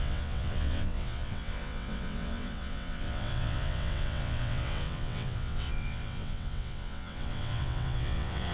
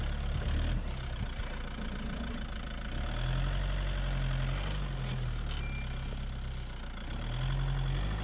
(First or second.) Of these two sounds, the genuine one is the second